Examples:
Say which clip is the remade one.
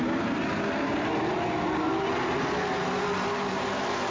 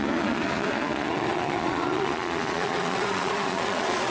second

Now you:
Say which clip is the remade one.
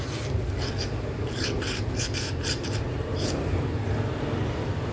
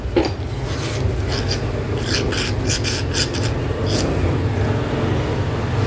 first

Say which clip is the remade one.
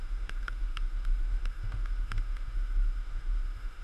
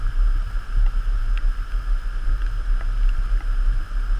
first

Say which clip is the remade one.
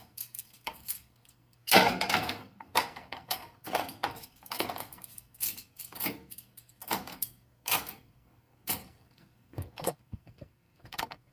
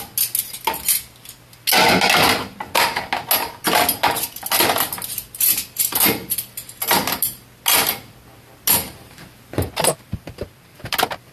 first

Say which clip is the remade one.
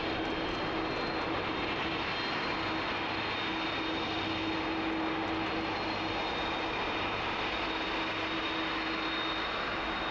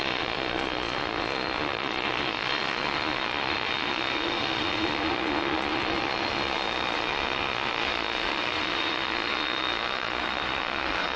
second